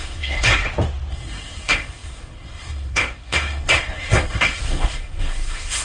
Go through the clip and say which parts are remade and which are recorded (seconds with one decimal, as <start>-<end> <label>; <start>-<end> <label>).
0.0-0.6 remade; 0.6-1.1 recorded; 1.1-5.8 remade